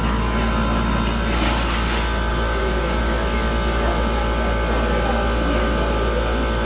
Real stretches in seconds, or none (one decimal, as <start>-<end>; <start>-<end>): 0.0-2.3; 3.0-6.7